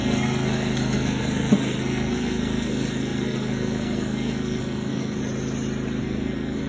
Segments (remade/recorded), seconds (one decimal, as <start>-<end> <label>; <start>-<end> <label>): 0.0-5.2 remade; 5.2-6.0 recorded; 6.0-6.7 remade